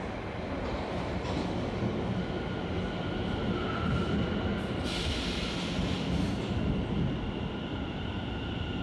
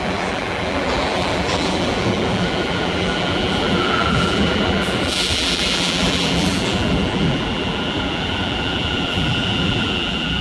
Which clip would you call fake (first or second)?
second